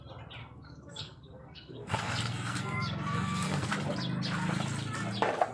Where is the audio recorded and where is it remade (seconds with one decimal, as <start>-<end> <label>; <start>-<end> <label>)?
0.0-0.4 recorded; 0.4-3.7 remade; 3.7-5.5 recorded